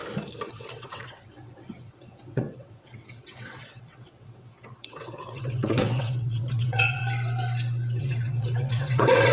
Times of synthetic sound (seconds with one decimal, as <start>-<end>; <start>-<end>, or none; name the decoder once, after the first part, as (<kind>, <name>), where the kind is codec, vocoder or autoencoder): 0.5-7.0 (vocoder, WaveNeXt); 8.0-9.3